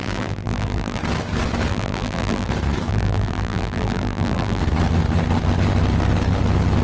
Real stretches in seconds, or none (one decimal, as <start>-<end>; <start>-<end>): 1.0-1.7; 2.5-2.9; 4.6-6.8